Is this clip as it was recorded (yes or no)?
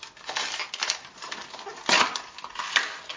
yes